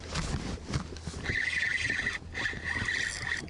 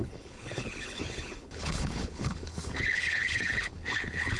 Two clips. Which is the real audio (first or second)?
first